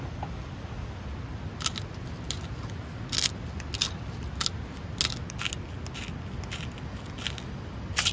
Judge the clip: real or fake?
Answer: real